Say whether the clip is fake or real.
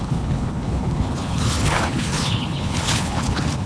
fake